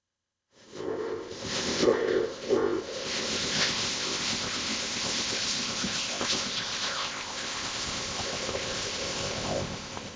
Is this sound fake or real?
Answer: fake